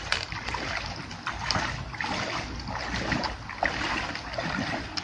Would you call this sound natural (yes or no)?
yes